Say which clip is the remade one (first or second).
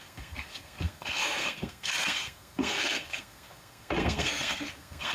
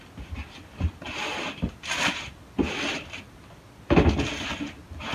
first